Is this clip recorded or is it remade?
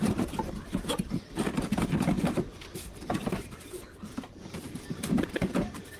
recorded